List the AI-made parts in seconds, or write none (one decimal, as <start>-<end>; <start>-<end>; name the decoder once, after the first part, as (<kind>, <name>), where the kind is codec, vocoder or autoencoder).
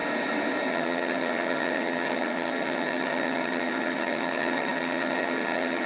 0.7-5.9 (vocoder, HiFi-GAN)